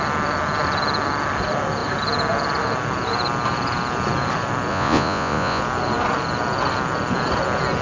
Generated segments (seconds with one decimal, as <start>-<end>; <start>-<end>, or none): 4.7-5.6